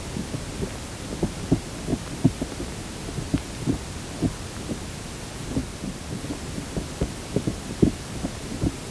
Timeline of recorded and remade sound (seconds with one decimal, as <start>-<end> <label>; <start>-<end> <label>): 0.0-8.9 recorded